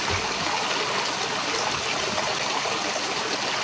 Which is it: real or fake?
real